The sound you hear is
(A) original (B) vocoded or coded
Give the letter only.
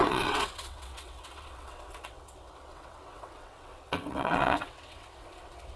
B